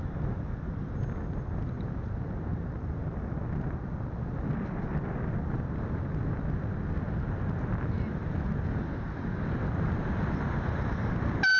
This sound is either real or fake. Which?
real